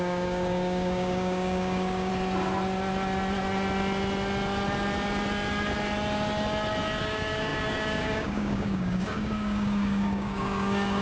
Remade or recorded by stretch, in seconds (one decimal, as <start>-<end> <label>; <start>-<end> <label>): 0.0-2.1 remade; 2.1-7.0 recorded; 7.0-11.0 remade